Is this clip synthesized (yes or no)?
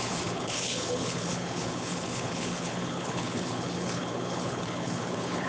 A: yes